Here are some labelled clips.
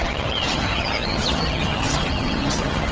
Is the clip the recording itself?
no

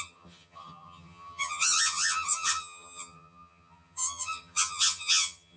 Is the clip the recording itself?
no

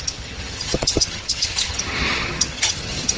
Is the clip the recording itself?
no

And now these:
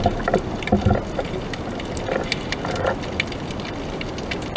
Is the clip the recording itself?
yes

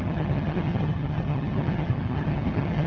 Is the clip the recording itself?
no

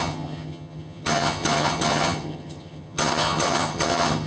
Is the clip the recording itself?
no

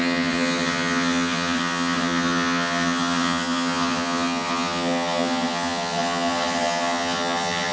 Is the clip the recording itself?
no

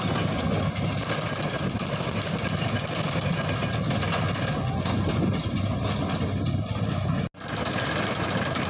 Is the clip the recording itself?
yes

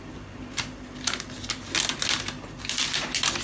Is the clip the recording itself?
yes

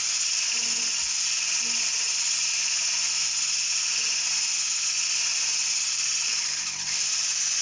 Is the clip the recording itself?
yes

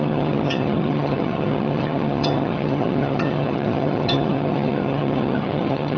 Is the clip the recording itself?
no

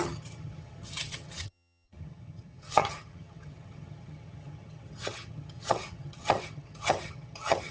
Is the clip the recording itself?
no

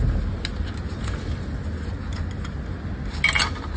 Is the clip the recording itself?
yes